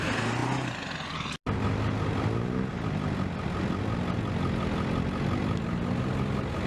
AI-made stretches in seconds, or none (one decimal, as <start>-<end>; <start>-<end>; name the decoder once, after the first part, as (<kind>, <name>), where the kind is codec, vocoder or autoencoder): none